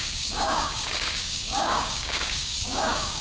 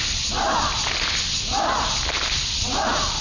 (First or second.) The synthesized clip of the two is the first